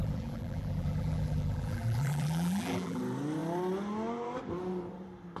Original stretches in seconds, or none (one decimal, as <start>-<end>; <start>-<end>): 3.0-5.4